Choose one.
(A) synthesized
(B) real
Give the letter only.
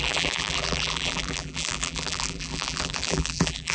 A